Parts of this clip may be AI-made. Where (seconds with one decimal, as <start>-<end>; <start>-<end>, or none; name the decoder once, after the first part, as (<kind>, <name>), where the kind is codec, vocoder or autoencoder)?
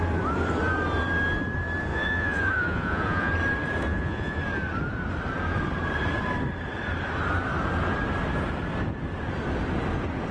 1.9-3.3 (vocoder, Vocos); 3.9-4.4